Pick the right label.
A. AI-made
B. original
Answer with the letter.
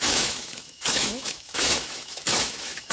A